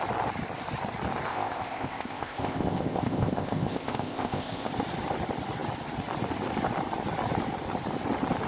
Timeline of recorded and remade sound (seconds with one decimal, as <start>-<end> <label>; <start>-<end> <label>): 0.0-1.3 recorded; 1.3-4.7 remade; 4.7-8.5 recorded